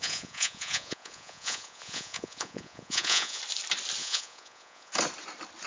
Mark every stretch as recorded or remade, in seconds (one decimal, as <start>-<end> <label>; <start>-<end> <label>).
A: 0.0-3.4 remade; 3.4-4.0 recorded; 4.0-4.9 remade; 4.9-5.7 recorded